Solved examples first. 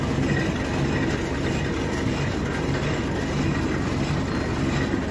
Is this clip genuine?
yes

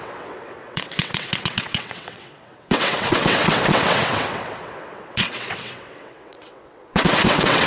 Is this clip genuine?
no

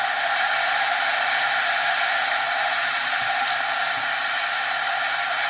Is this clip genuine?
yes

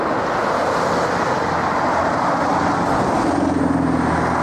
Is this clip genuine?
yes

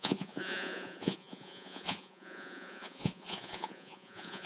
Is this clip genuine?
no